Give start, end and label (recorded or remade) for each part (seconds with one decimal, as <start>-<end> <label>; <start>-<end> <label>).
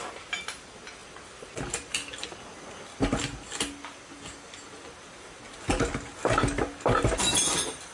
0.0-7.9 recorded